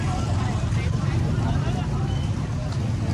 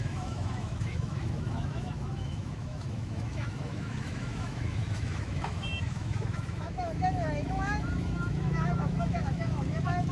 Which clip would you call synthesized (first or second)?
second